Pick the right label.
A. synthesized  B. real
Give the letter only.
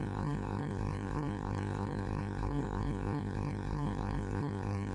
A